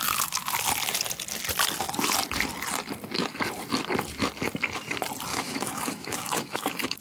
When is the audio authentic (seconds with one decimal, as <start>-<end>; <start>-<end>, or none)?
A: 0.0-5.3